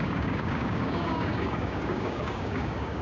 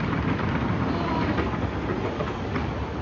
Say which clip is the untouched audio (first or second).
second